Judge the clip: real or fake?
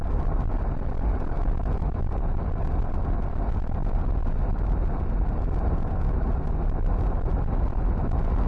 real